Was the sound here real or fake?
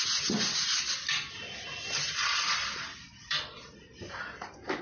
real